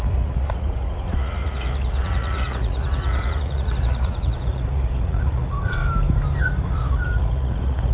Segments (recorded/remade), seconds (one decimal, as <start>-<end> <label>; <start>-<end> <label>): 0.0-5.8 remade; 5.8-6.4 recorded; 6.4-7.9 remade